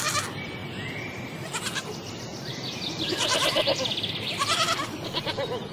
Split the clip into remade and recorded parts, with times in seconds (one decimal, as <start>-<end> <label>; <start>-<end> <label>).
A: 0.0-5.7 remade